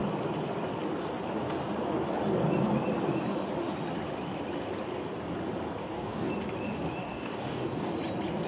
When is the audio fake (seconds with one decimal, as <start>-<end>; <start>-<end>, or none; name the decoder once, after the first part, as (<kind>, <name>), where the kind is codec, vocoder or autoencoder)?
5.8-6.3 (codec, DAC); 7.0-7.9